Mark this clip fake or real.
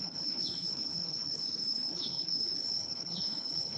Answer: fake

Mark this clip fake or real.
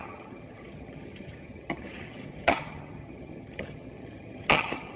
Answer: fake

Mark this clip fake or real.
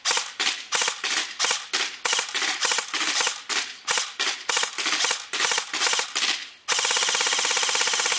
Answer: real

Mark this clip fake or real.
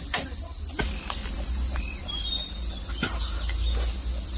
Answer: real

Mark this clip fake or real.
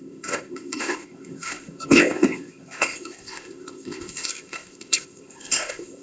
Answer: fake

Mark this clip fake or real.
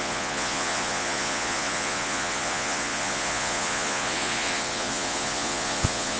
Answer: fake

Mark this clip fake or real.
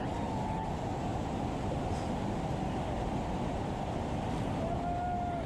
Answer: real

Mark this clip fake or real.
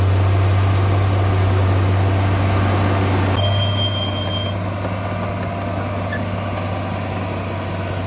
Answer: real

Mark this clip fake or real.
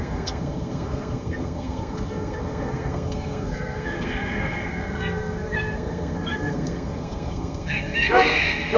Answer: fake